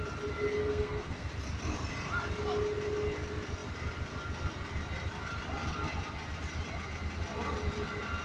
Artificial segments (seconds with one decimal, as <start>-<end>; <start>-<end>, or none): 0.6-1.3

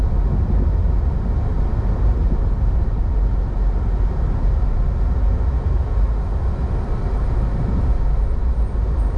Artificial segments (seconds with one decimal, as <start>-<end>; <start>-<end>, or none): none

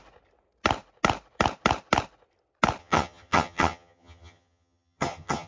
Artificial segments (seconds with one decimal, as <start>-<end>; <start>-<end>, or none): 2.8-5.5

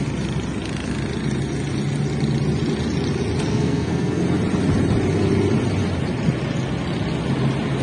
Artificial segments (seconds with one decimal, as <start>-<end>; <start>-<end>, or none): 3.5-4.2

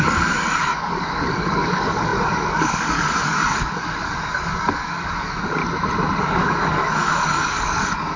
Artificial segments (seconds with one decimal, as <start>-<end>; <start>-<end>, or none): 0.0-5.6; 6.2-8.2

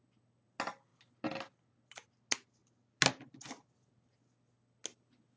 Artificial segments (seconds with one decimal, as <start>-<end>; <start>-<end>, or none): none